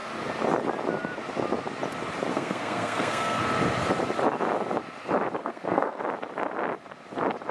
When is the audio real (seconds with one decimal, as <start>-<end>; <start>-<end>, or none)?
0.0-2.3; 3.4-5.4; 6.0-7.5